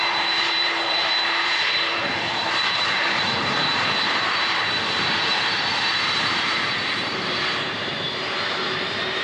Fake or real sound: fake